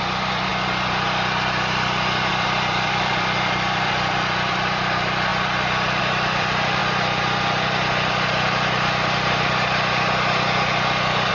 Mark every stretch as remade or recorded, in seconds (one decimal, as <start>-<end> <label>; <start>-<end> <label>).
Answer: 0.0-0.5 remade; 0.5-2.3 recorded; 2.3-5.3 remade; 5.3-6.0 recorded; 6.0-6.8 remade; 6.8-11.3 recorded